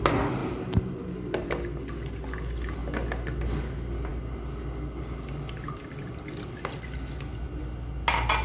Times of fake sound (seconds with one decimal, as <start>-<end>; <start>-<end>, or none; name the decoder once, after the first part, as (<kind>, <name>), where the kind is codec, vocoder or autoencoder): 0.4-1.5 (vocoder, BigVGAN v2)